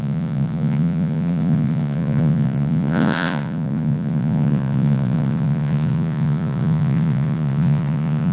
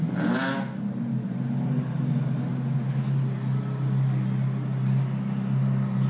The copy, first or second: first